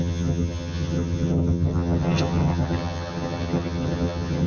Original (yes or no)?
no